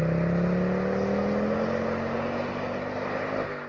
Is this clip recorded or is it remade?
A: recorded